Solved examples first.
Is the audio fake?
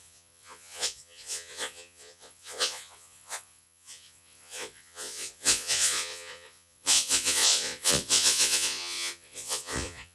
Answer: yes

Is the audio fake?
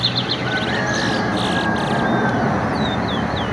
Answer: no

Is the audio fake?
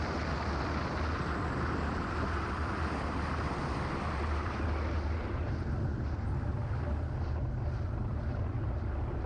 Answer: no